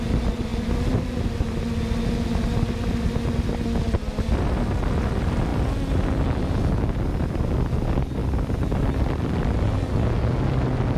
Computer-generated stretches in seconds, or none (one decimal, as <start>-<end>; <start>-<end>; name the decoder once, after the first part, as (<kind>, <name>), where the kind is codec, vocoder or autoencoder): none